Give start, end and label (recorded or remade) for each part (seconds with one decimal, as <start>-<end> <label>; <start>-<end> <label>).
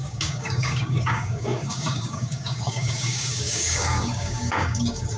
0.0-5.2 remade